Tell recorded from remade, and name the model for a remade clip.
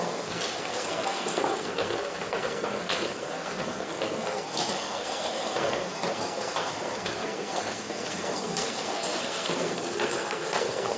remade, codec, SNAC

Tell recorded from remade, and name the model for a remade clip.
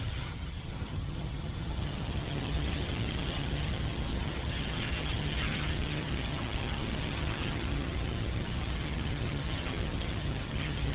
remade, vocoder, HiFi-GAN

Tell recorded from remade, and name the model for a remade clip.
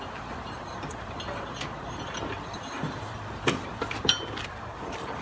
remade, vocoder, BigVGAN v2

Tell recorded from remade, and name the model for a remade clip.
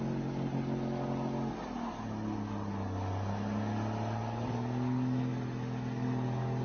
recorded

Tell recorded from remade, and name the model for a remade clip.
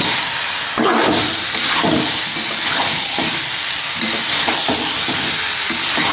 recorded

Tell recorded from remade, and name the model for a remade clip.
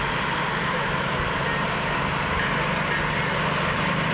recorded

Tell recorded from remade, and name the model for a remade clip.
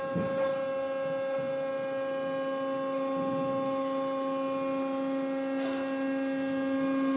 recorded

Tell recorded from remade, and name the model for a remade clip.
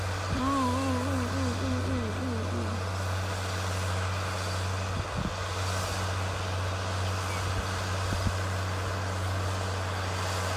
recorded